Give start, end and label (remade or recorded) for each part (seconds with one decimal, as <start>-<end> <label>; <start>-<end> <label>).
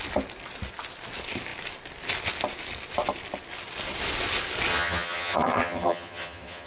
0.0-4.7 recorded; 4.7-6.7 remade